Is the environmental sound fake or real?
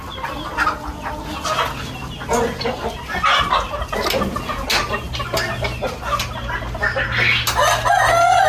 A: real